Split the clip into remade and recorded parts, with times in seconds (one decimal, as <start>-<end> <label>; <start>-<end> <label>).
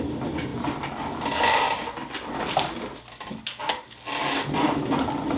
0.0-0.5 remade; 0.5-3.7 recorded; 3.7-5.4 remade